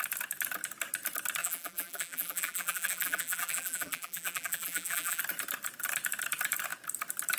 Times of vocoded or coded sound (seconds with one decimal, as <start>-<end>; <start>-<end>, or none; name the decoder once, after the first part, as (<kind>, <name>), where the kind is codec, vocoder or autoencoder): 1.4-5.2 (vocoder, BigVGAN v2)